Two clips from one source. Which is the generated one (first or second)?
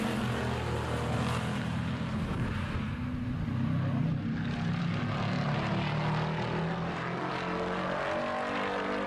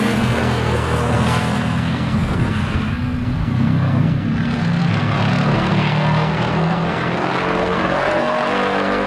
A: second